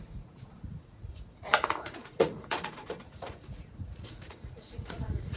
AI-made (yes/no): yes